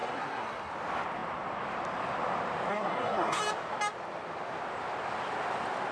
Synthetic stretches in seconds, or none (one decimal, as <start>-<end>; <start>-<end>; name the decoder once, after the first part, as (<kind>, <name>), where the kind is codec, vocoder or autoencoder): 0.0-0.7 (codec, SNAC); 2.7-3.4